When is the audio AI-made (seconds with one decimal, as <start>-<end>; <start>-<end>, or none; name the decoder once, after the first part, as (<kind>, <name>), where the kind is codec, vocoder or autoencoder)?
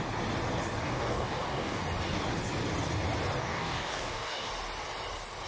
0.8-1.8 (codec, DAC); 3.4-4.5